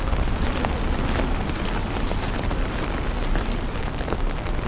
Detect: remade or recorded recorded